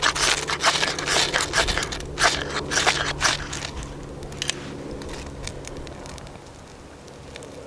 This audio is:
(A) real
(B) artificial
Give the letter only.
A